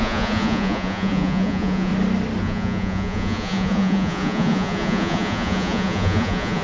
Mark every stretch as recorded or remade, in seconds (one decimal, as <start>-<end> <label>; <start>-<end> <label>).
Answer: 0.0-1.9 remade; 1.9-2.4 recorded; 2.4-6.6 remade